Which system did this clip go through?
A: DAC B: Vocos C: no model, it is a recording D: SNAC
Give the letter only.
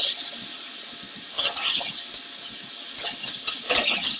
C